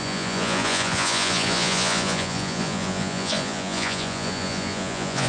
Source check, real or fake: fake